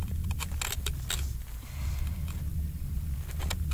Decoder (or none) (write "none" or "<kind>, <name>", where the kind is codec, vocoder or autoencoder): none